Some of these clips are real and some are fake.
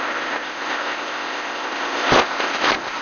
fake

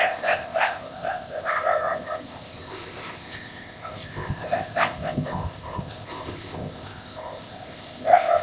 fake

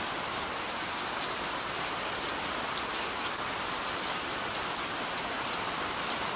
real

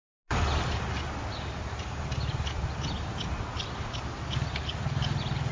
real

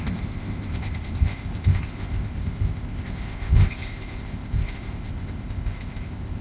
fake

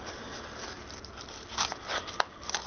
real